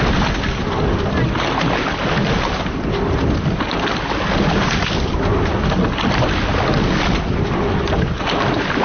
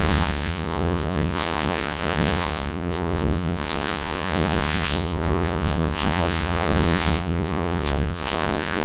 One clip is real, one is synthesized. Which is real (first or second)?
first